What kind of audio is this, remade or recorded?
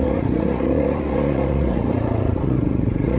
remade